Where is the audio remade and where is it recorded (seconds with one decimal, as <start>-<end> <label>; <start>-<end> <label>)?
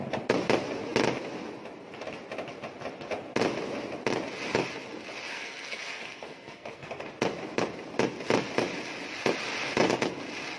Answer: 0.0-5.3 recorded; 5.3-7.1 remade; 7.1-10.6 recorded